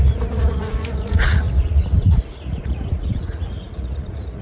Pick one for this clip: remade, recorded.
remade